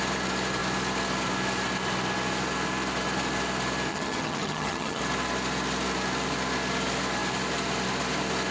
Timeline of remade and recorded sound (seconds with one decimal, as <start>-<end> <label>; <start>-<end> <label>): 0.0-3.9 recorded; 3.9-5.0 remade; 5.0-8.5 recorded